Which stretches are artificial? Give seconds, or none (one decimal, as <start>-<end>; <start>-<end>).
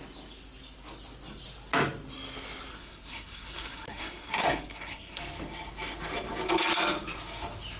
2.7-5.2